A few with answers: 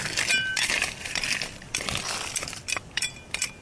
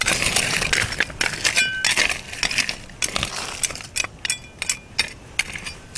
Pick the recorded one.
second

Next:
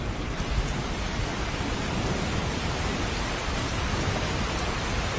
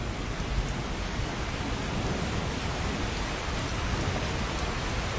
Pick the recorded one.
second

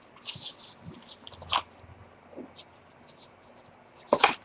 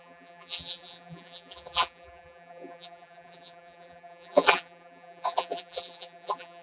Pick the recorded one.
first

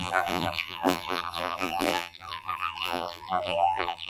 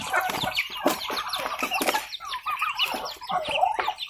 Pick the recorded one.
second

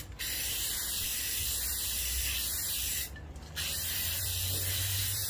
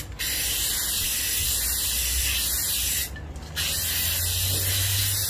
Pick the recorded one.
second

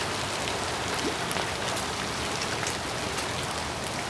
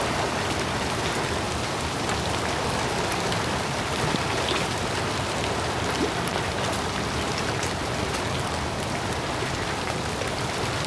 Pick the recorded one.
first